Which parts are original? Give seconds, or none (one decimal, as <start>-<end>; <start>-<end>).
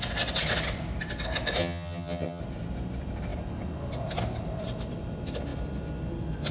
0.0-1.6; 2.4-6.5